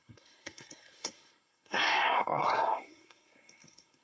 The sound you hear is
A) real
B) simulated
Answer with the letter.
B